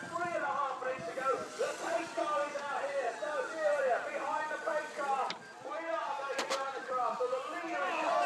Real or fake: real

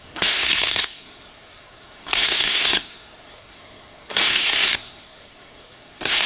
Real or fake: fake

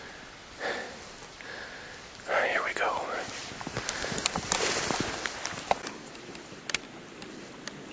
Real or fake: real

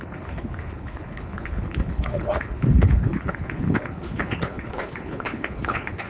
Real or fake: fake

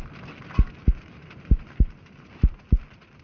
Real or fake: real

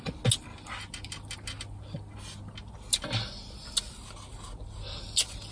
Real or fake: real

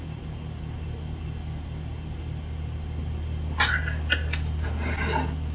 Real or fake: real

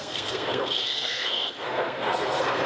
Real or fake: fake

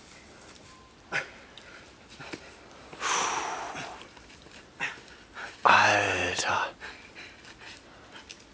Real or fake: real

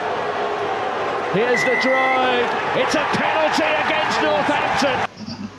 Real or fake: real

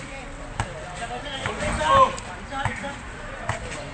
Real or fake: real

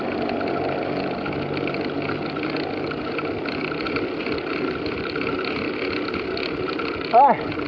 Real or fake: real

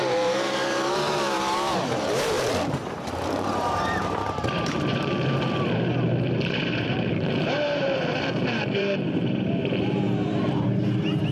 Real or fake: fake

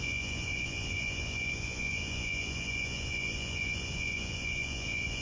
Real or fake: fake